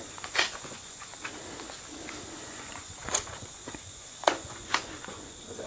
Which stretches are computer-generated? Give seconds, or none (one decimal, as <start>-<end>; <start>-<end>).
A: 0.0-1.1; 2.4-5.7